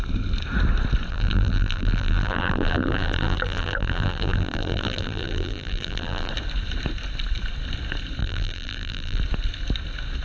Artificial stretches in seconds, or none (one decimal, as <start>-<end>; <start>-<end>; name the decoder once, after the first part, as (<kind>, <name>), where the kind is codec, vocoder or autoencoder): 1.1-6.3 (vocoder, BigVGAN v2); 8.2-9.2